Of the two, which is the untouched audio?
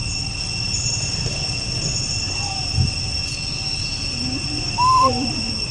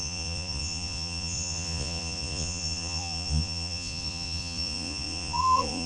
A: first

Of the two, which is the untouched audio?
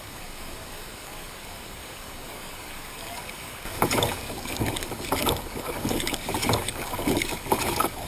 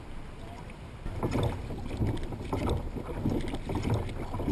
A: second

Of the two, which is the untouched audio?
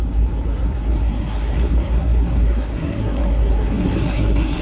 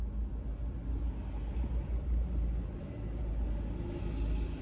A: second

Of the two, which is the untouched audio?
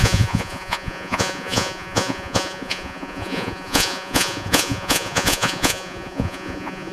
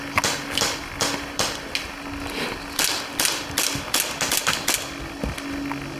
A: second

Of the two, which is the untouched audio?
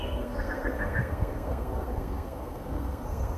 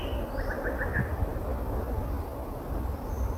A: second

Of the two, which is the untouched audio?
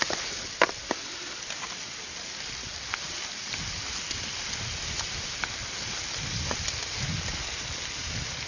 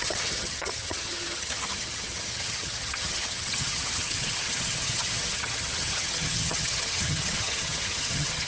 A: first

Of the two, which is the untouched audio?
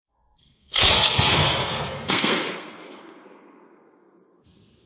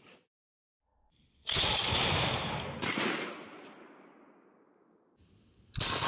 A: second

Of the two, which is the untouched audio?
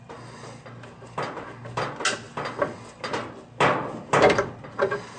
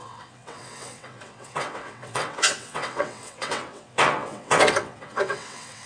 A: first